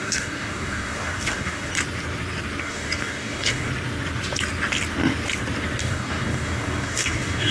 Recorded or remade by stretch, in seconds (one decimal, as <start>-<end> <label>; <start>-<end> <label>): 0.0-1.7 remade; 1.7-2.6 recorded; 2.6-3.7 remade; 3.7-5.8 recorded; 5.8-7.5 remade